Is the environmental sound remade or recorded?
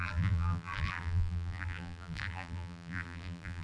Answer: remade